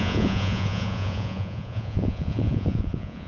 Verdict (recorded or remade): remade